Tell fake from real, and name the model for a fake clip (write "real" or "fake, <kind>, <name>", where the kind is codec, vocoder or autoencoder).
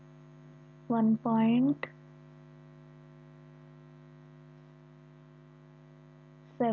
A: real